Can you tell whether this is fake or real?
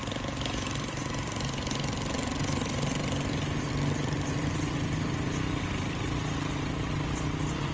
real